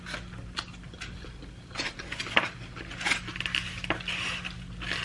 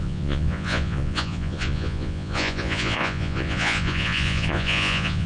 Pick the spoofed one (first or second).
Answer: second